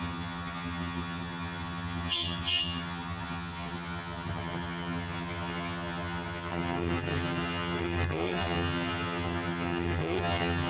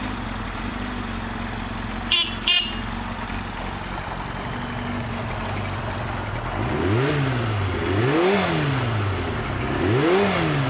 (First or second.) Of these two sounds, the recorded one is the second